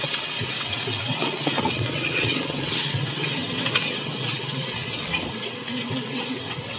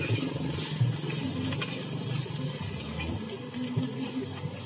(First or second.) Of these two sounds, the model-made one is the first